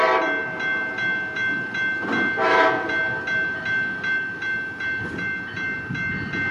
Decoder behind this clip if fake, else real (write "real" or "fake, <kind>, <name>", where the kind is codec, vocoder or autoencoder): real